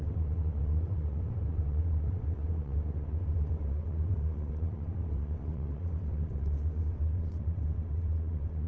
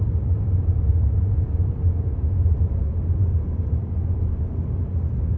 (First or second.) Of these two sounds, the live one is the second